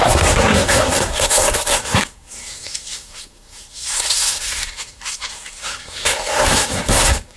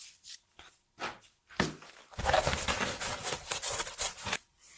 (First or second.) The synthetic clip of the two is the first